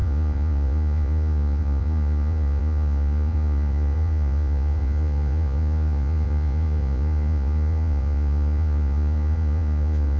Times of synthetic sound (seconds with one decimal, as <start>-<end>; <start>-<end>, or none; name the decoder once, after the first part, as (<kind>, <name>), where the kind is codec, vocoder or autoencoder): 0.0-10.2 (vocoder, Vocos)